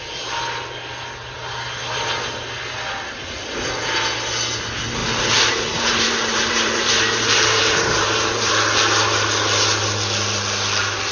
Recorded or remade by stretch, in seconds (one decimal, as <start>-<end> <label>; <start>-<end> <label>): 0.0-5.0 recorded; 5.0-8.5 remade; 8.5-11.1 recorded